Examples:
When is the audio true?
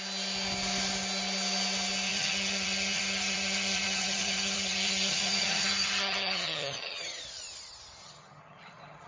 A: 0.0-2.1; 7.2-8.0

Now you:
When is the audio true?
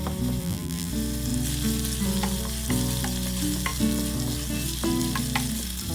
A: 0.0-0.4; 0.9-5.9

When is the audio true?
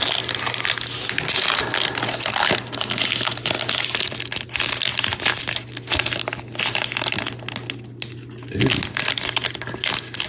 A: 0.0-10.3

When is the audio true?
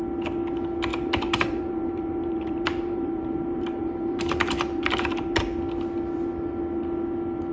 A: 0.0-0.9; 5.4-7.5